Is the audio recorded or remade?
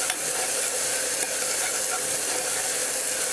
recorded